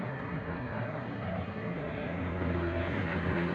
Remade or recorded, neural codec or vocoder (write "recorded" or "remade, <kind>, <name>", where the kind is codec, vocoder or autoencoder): remade, codec, SNAC